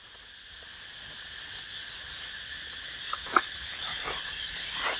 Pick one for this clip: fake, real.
real